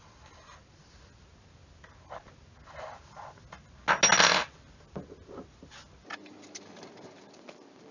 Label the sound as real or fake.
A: real